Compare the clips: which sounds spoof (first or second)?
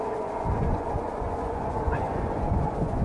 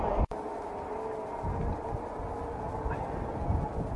first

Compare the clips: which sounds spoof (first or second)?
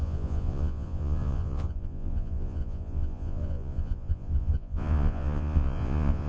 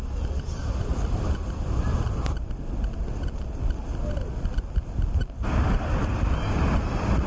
first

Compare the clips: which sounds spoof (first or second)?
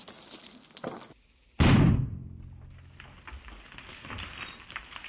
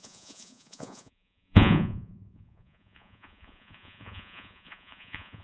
second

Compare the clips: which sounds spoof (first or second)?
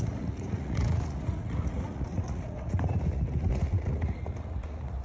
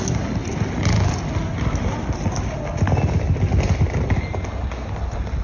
first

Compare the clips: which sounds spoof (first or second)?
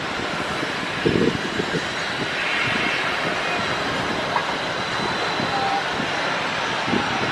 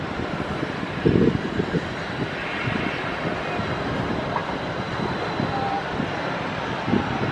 second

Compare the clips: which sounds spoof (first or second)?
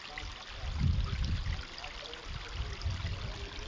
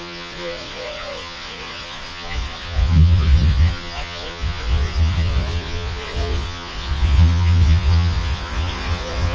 second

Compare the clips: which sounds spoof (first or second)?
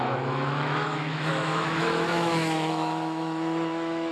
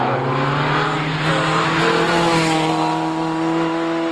first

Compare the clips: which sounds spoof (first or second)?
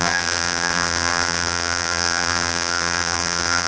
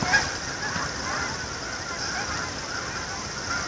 first